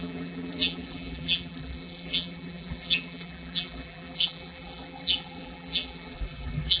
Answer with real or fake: fake